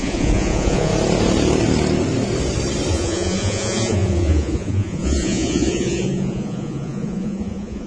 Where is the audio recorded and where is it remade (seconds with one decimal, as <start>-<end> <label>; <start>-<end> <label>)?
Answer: 0.0-0.9 remade; 0.9-2.9 recorded; 2.9-7.9 remade